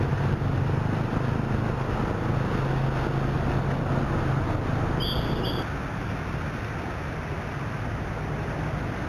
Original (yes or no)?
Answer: yes